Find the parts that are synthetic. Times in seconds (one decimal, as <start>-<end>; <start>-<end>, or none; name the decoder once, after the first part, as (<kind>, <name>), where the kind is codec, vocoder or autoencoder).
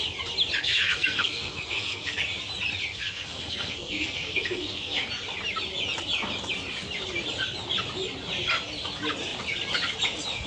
0.6-2.2 (codec, SNAC); 2.9-5.1